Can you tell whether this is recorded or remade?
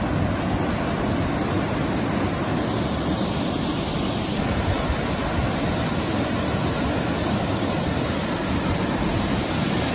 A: recorded